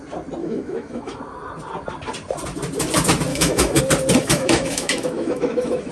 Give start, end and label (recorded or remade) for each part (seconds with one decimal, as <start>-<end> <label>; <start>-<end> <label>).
0.0-0.4 recorded; 0.4-1.2 remade; 1.2-3.3 recorded; 3.3-3.8 remade; 3.8-4.2 recorded; 4.2-5.9 remade